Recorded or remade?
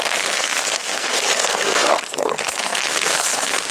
remade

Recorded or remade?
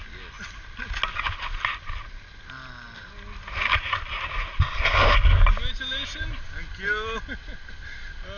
recorded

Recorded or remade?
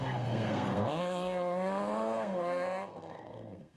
remade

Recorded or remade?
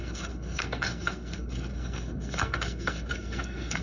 remade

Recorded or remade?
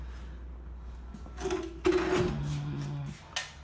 recorded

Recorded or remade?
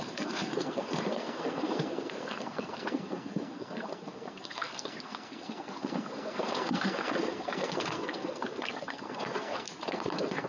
remade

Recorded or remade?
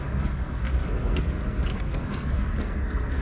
remade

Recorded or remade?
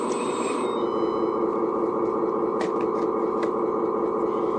recorded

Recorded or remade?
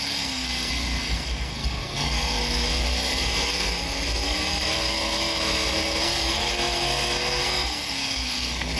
remade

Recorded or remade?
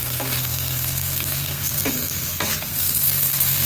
remade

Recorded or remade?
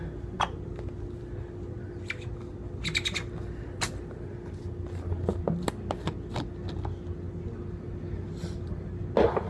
recorded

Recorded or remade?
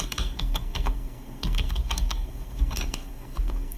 remade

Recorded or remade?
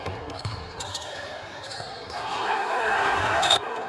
remade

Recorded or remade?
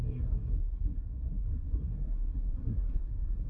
remade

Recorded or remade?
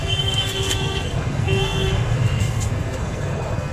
remade